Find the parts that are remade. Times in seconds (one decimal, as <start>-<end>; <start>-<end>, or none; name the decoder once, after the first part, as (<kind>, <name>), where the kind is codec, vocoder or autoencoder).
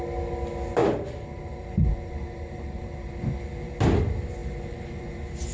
0.8-3.2 (vocoder, BigVGAN v2)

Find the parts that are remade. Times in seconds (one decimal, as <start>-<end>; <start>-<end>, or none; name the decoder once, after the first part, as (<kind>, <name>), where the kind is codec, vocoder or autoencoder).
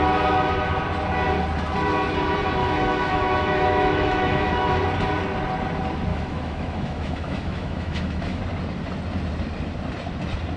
2.6-4.7 (autoencoder, DAC-VAE); 6.1-8.4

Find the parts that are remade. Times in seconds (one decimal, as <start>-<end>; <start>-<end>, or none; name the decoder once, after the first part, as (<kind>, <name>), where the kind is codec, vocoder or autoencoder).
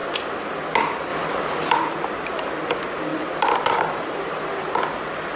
0.0-0.6 (vocoder, BigVGAN v2); 1.1-1.7; 3.1-4.6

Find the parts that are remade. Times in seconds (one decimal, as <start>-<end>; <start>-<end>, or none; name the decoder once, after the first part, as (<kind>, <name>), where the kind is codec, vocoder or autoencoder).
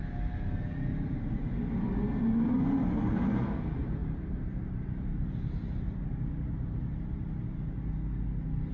none